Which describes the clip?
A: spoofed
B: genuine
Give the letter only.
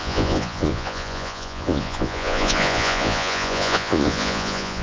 A